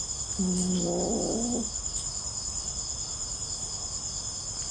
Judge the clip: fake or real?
real